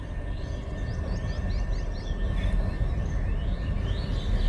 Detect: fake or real real